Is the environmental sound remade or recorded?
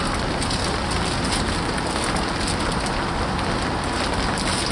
recorded